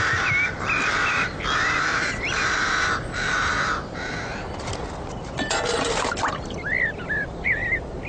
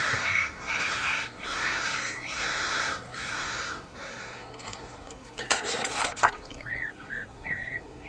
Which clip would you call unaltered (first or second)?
first